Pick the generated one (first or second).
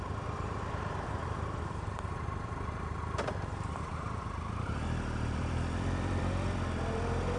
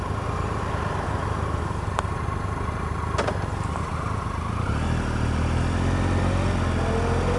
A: first